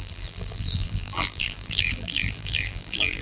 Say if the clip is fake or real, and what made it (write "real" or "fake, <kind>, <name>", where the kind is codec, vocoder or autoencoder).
fake, vocoder, BigVGAN v2